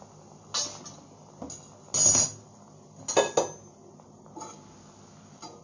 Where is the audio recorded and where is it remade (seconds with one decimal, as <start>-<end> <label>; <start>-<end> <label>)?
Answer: 0.0-5.6 recorded